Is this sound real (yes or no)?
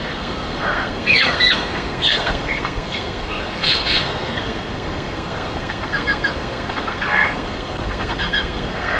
no